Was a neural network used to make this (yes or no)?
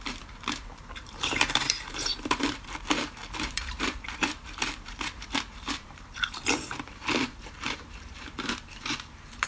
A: yes